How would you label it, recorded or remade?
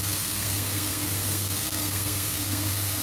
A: remade